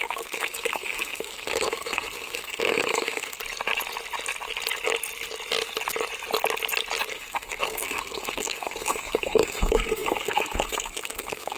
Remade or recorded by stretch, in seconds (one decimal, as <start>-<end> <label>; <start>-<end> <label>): 0.0-3.4 remade; 3.4-7.1 recorded; 7.1-11.6 remade